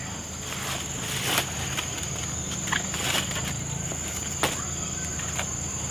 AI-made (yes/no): no